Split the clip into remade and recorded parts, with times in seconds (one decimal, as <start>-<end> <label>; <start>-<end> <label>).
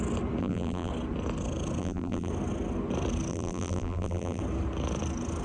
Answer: 0.0-0.4 recorded; 0.4-0.9 remade; 0.9-1.8 recorded; 1.8-2.3 remade; 2.3-3.3 recorded; 3.3-4.4 remade; 4.4-5.4 recorded